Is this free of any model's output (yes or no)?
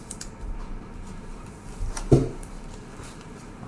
no